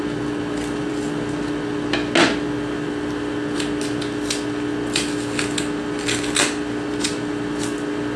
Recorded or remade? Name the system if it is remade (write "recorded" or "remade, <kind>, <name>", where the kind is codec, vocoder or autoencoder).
recorded